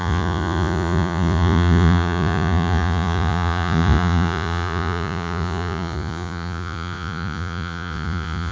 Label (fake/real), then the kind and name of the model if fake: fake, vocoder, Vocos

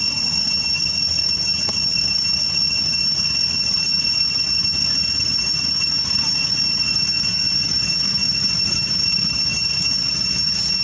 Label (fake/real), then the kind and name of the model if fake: real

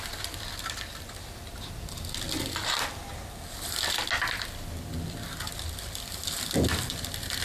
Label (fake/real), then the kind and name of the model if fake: real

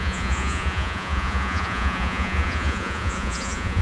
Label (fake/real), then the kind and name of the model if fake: fake, vocoder, Vocos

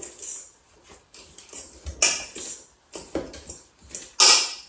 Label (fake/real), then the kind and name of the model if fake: real